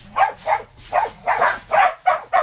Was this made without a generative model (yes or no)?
no